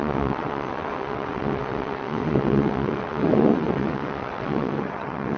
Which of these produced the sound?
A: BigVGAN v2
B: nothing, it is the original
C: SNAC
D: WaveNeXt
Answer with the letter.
D